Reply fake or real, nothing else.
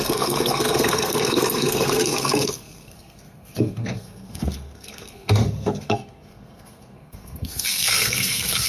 fake